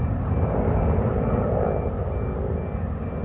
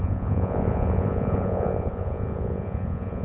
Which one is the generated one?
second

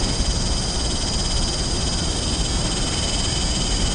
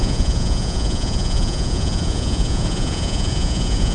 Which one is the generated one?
second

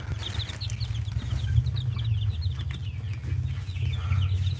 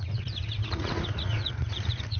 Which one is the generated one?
second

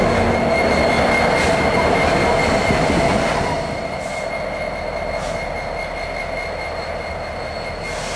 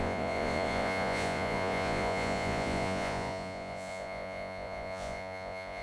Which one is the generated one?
second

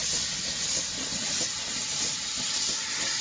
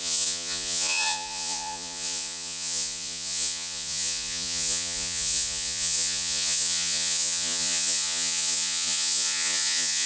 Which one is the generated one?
second